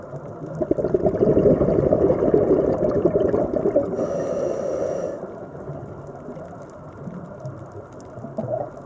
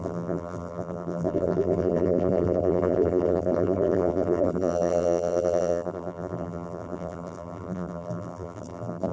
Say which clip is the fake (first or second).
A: second